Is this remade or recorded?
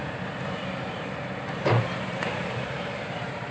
remade